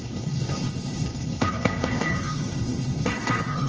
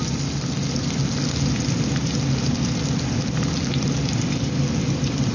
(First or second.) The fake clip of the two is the first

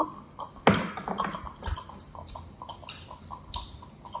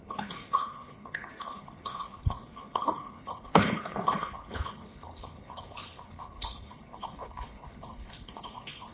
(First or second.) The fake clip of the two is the second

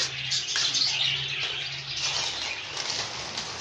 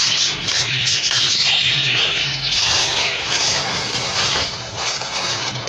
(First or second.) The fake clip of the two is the second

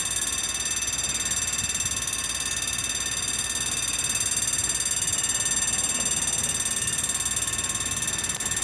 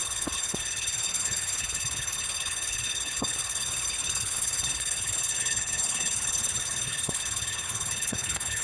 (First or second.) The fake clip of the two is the second